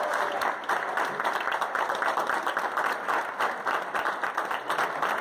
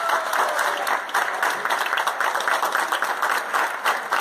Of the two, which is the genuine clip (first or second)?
second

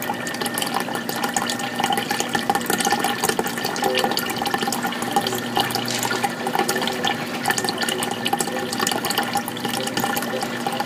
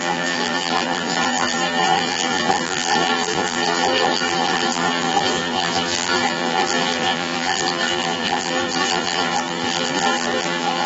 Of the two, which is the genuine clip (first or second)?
first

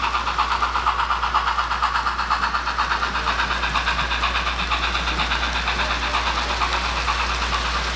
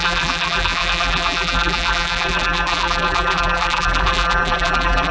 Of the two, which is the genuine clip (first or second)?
first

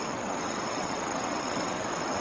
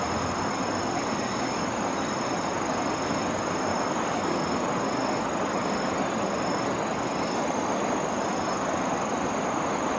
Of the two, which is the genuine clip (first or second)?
second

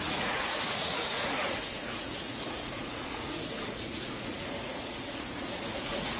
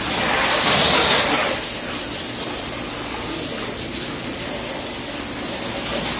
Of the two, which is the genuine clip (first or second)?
second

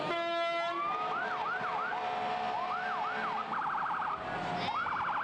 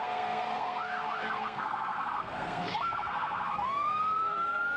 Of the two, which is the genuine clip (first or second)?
first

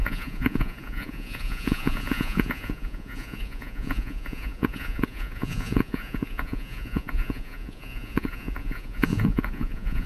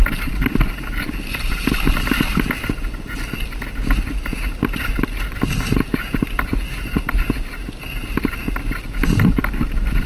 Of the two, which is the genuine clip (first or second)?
second